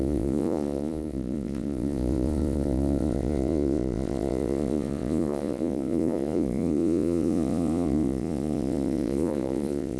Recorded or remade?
remade